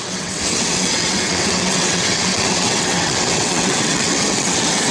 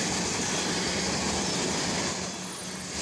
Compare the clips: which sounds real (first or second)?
second